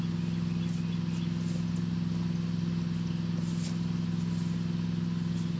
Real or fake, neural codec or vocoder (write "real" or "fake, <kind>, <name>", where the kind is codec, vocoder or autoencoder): real